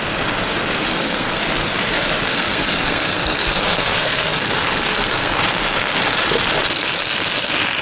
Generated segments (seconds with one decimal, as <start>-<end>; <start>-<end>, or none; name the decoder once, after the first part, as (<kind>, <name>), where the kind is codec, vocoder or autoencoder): 0.9-1.4 (codec, SNAC); 2.3-5.3